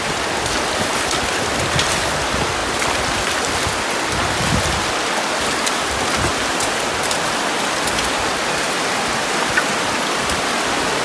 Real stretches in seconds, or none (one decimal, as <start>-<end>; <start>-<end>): 0.0-11.0